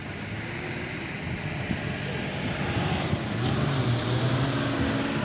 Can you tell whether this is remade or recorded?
recorded